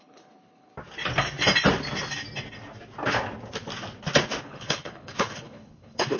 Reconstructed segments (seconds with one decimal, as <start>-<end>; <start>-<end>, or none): 0.0-0.7; 4.4-6.2